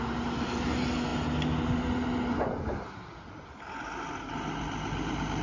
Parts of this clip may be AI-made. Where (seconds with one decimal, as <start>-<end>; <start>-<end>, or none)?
none